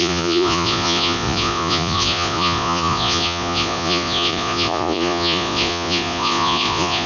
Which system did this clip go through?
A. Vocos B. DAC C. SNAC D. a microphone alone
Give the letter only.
A